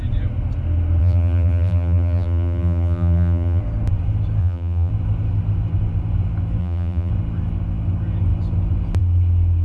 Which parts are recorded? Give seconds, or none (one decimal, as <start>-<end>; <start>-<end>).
0.0-1.0; 3.6-4.4; 4.9-6.6; 7.1-9.6